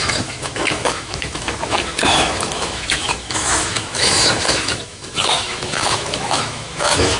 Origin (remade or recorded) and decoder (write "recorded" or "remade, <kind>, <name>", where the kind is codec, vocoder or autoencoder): remade, autoencoder, DAC-VAE